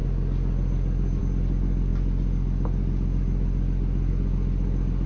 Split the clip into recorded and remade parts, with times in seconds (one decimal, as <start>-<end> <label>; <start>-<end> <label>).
0.0-5.1 recorded